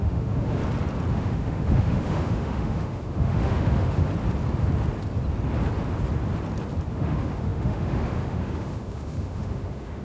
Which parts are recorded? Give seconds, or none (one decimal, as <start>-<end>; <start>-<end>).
0.6-1.1; 4.1-6.9